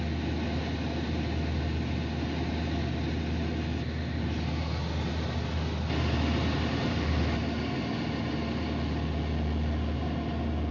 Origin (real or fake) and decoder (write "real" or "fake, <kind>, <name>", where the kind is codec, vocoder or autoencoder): real